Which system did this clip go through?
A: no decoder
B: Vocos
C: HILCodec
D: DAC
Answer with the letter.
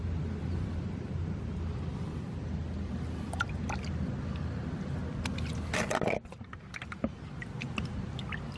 A